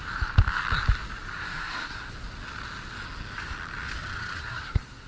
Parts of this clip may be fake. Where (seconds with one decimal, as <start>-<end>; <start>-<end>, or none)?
1.3-2.1; 4.4-5.1